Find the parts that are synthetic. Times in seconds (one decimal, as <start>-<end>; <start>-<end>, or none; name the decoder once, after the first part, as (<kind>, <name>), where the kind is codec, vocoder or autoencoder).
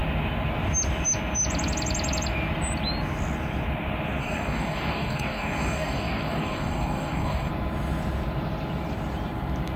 4.2-7.5 (codec, DAC)